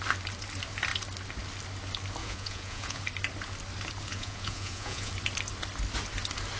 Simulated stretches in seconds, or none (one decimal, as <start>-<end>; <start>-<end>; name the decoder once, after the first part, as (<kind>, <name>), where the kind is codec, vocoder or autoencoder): 2.2-3.0 (vocoder, Vocos); 4.1-5.1